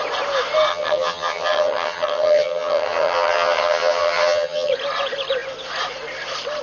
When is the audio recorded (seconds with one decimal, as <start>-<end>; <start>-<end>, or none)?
0.0-0.7; 4.7-6.6